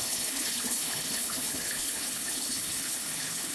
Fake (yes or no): yes